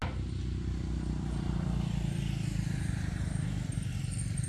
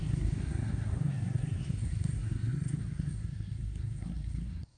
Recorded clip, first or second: first